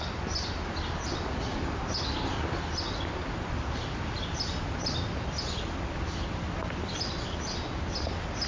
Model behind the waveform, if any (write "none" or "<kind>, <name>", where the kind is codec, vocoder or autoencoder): none